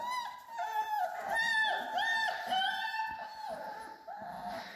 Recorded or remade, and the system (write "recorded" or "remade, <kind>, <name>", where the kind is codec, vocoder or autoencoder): recorded